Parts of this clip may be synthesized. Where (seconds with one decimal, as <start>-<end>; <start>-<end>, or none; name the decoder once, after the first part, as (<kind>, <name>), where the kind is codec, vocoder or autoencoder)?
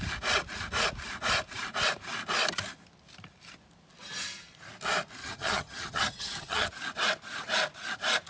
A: 5.2-6.7 (vocoder, HiFi-GAN)